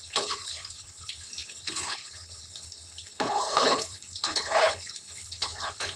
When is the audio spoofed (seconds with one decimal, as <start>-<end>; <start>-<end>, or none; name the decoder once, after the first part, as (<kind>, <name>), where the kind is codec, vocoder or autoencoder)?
0.0-6.0 (codec, HILCodec)